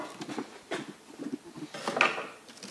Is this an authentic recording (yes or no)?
yes